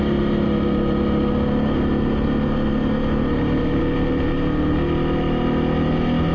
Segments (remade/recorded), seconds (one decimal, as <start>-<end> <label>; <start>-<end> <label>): 0.0-6.3 recorded